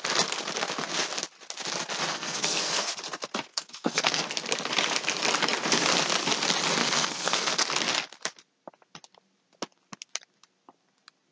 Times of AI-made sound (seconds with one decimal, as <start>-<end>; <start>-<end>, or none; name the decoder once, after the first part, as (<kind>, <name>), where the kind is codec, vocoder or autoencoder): 2.1-2.9 (codec, SNAC); 3.5-4.2; 6.8-7.5